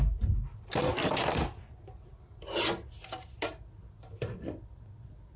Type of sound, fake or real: real